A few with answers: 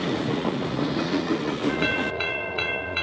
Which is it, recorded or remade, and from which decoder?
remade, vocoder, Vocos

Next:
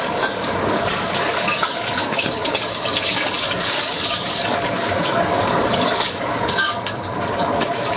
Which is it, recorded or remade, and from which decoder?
remade, codec, DAC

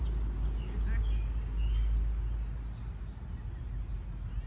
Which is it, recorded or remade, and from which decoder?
recorded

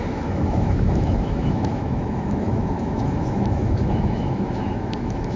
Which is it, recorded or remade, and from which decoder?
remade, autoencoder, DAC-VAE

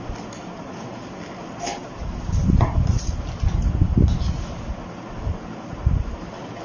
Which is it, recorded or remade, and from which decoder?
recorded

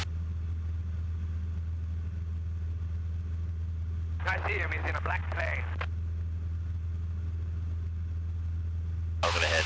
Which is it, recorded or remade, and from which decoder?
recorded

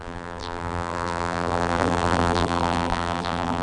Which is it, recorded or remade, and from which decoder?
remade, vocoder, BigVGAN v2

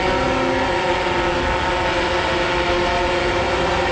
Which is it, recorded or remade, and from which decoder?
recorded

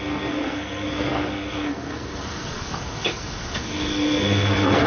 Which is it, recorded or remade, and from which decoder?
remade, codec, SNAC